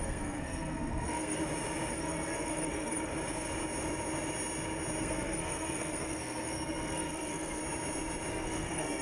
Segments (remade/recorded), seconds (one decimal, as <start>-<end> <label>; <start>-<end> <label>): 0.0-1.4 remade; 1.4-1.9 recorded; 1.9-3.1 remade; 3.1-5.0 recorded; 5.0-7.6 remade; 7.6-8.3 recorded; 8.3-9.0 remade